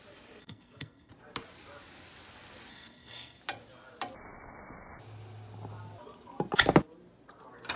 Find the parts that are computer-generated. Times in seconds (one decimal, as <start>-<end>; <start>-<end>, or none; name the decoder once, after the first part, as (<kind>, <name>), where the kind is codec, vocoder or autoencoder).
0.4-1.1 (codec, SNAC); 2.7-3.4